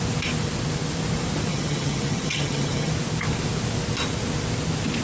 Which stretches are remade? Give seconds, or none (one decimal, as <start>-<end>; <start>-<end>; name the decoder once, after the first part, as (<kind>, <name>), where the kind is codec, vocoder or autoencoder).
1.5-2.9 (vocoder, HiFi-GAN)